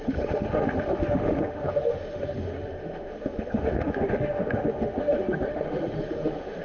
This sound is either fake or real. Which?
fake